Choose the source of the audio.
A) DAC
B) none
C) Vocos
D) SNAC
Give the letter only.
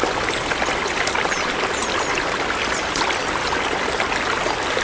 B